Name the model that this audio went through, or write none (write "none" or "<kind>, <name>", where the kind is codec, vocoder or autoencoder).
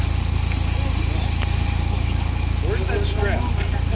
none